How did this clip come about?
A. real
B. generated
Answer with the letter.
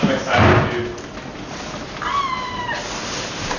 A